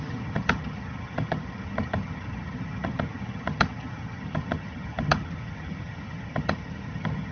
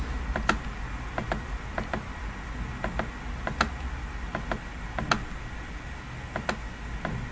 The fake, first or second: first